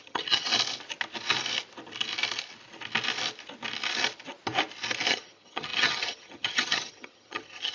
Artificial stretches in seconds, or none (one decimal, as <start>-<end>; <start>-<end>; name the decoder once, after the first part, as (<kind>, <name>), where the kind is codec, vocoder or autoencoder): 0.0-0.5 (vocoder, HiFi-GAN); 5.1-7.7